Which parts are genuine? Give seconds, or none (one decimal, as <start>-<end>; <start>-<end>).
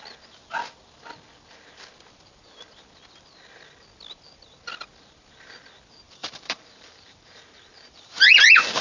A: 0.0-6.2; 8.4-8.8